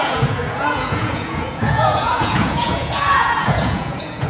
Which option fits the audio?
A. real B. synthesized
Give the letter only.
B